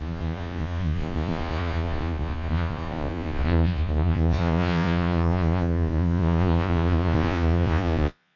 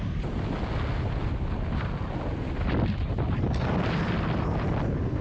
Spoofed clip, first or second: first